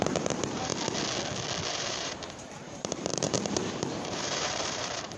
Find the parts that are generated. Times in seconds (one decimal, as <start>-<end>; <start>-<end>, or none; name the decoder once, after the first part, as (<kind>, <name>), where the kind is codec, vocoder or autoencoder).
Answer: 0.0-0.7 (vocoder, BigVGAN v2); 1.7-5.2